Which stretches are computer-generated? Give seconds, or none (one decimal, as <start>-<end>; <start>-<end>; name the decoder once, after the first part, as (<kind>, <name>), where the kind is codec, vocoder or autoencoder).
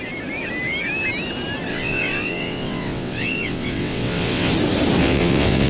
1.7-4.5 (vocoder, WaveNeXt); 5.0-5.7